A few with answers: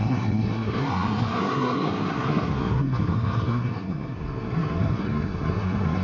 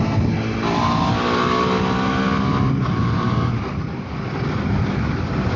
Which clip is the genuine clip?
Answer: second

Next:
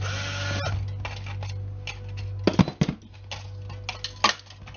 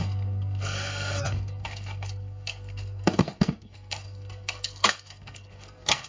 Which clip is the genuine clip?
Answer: first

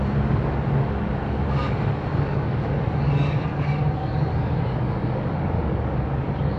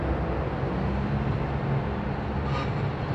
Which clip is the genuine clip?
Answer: second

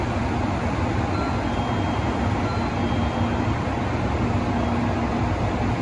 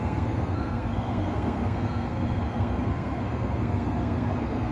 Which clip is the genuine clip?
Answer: first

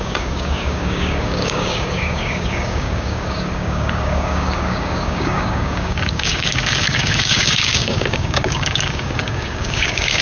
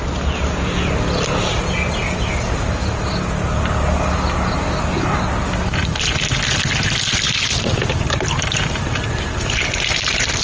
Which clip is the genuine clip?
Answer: second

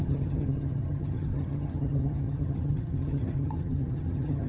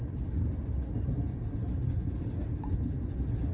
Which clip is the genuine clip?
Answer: second